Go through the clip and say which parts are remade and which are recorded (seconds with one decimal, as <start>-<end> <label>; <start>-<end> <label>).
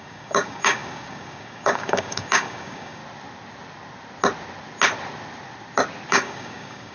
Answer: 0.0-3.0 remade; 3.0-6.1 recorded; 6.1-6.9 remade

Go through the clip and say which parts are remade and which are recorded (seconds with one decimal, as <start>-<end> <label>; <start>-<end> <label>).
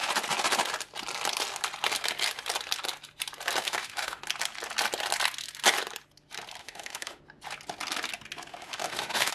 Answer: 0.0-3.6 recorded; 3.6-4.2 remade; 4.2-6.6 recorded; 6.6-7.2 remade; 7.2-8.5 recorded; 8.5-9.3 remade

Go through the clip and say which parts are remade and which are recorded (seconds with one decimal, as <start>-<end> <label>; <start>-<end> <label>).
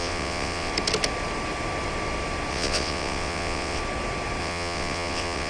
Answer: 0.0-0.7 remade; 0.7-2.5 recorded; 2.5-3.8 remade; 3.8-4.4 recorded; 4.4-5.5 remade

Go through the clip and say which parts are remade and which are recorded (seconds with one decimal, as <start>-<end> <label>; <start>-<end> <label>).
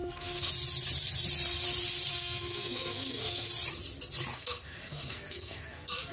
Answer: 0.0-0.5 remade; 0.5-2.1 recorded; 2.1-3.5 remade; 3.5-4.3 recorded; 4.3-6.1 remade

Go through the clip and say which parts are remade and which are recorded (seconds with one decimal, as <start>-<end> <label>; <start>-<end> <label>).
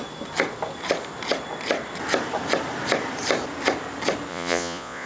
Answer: 0.0-4.3 recorded; 4.3-5.1 remade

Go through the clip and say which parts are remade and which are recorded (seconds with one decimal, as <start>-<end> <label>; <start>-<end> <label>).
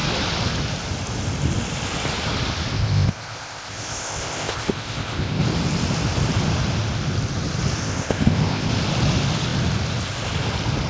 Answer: 0.0-2.7 recorded; 2.7-5.4 remade; 5.4-7.8 recorded; 7.8-8.7 remade; 8.7-10.9 recorded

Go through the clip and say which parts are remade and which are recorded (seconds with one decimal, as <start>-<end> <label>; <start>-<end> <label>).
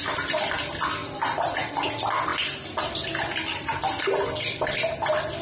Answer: 0.0-5.4 recorded